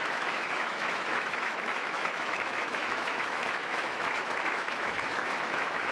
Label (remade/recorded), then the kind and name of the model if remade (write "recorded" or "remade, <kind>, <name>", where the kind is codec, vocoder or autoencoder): remade, autoencoder, DAC-VAE